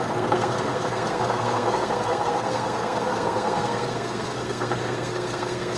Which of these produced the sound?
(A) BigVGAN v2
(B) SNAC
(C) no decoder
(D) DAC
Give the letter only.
B